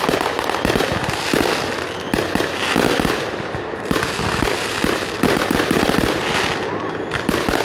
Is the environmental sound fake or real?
real